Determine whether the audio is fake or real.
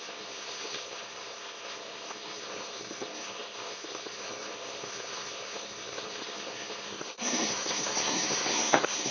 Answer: fake